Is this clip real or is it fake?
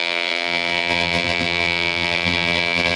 fake